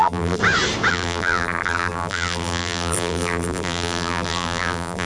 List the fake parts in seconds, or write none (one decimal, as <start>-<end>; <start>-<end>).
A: 0.0-0.4; 0.9-5.1